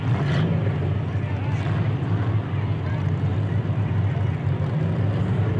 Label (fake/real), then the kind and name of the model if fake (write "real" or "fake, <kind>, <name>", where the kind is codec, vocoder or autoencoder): real